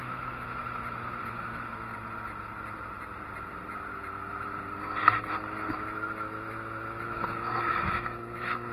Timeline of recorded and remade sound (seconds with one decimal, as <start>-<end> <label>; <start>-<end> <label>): 0.0-1.9 remade; 1.9-5.7 recorded; 5.7-8.7 remade